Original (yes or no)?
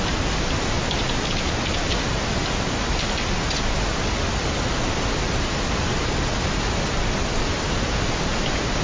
yes